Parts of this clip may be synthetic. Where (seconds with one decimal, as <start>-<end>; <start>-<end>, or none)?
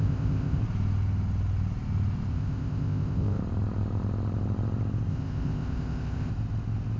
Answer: 0.0-0.6; 2.3-3.4; 5.1-6.3